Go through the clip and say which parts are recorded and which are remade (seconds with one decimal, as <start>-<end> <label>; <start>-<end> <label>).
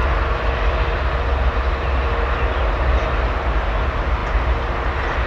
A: 0.0-5.3 recorded